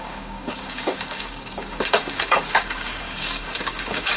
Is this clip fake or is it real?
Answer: fake